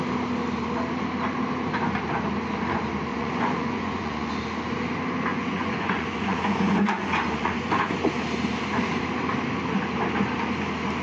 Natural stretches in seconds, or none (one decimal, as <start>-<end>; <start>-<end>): 0.0-3.1; 4.3-5.3; 8.1-11.0